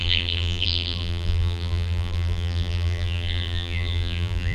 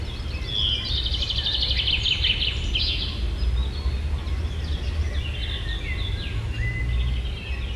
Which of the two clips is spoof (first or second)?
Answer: first